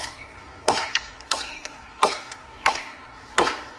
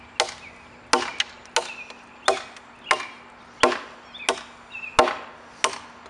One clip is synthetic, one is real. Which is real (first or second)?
second